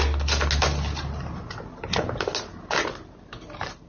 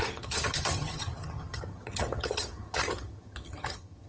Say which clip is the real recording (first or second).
first